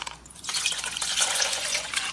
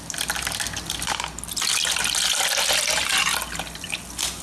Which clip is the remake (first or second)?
first